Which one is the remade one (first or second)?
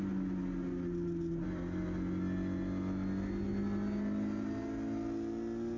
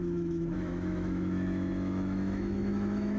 second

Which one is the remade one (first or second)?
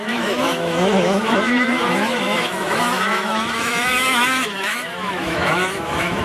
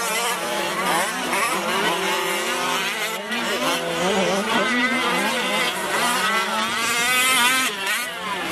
first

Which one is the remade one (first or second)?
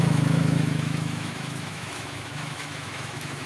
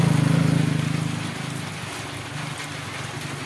first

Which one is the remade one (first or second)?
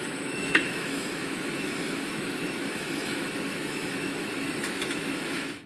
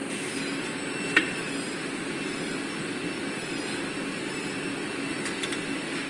first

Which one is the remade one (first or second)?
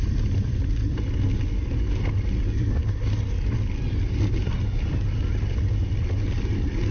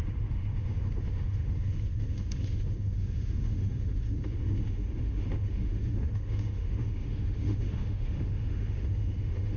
second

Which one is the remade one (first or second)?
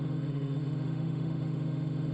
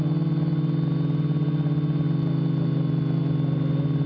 first